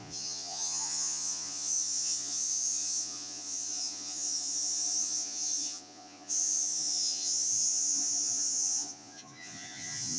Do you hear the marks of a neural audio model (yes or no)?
yes